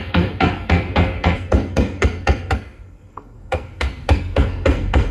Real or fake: fake